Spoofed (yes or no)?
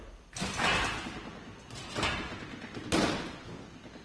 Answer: no